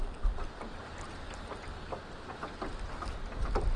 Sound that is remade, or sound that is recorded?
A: recorded